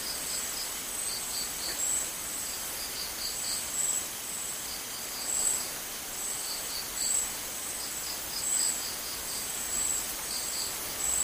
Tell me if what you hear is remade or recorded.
recorded